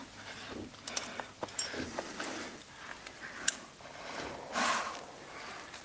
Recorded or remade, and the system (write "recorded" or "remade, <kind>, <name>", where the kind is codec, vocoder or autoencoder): recorded